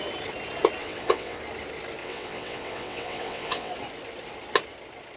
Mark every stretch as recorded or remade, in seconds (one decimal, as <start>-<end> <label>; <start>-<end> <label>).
0.0-0.8 recorded; 0.8-1.4 remade; 1.4-2.0 recorded; 2.0-3.7 remade; 3.7-5.2 recorded